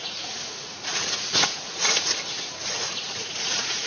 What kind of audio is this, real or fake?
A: fake